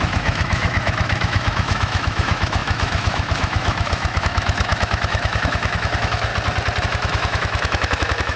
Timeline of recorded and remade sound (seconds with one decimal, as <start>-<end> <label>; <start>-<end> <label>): 0.0-6.3 remade; 6.3-6.8 recorded; 6.8-8.4 remade